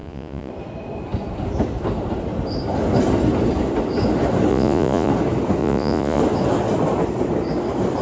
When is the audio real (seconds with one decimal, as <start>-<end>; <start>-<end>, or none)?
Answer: 0.5-4.5; 5.1-5.6; 6.2-8.0